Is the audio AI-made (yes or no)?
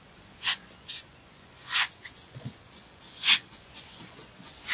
yes